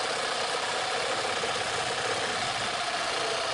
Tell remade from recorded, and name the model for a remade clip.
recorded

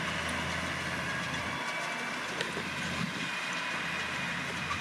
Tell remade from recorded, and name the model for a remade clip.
recorded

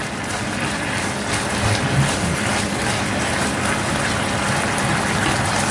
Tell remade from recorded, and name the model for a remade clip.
recorded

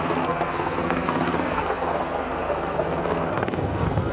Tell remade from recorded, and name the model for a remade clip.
remade, codec, SNAC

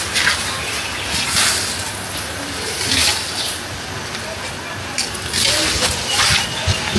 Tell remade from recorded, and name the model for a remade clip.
recorded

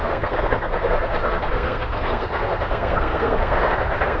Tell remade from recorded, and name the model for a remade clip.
remade, codec, SNAC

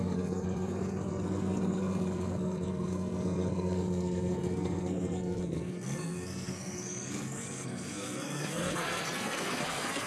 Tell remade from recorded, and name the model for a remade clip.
remade, codec, SNAC